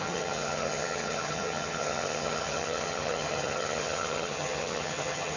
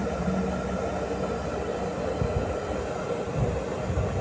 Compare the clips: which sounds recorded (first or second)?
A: second